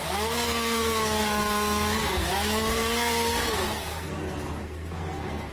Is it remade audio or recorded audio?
remade